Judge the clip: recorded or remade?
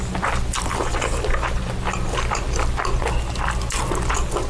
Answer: recorded